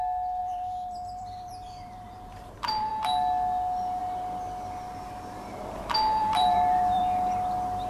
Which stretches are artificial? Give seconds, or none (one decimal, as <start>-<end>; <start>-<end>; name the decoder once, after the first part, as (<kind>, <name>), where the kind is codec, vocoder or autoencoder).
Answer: 0.4-2.9 (vocoder, BigVGAN v2); 6.2-7.0

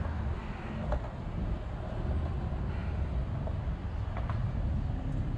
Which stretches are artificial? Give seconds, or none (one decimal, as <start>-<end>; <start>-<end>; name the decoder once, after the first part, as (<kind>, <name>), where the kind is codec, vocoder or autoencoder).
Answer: none

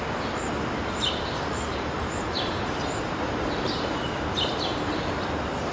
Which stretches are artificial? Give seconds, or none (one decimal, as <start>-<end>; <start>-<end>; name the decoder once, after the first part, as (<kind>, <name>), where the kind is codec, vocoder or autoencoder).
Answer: 1.7-5.1 (vocoder, BigVGAN v2)

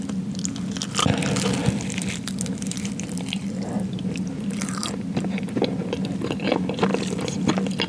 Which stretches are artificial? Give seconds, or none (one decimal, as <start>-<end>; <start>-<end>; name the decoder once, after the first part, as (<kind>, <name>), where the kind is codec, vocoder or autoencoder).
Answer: 1.6-5.8 (vocoder, BigVGAN v2)

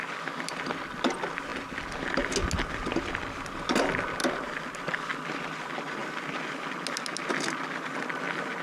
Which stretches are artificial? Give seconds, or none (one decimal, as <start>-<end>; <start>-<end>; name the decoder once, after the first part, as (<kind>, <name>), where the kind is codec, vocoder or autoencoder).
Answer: 4.2-4.9 (vocoder, BigVGAN v2)

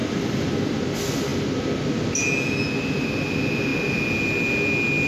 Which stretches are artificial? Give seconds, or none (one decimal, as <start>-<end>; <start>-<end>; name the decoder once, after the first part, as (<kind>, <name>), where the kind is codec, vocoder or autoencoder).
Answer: 0.0-0.5 (vocoder, BigVGAN v2)

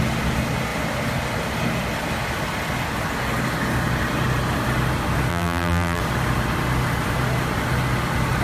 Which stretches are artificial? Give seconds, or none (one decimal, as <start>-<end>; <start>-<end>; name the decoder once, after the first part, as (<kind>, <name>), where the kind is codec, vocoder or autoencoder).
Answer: 5.3-6.0 (vocoder, BigVGAN v2)

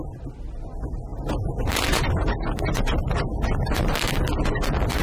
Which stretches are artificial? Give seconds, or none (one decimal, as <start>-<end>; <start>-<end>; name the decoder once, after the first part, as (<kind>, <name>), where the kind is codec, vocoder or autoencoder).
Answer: 1.1-4.1 (vocoder, BigVGAN v2)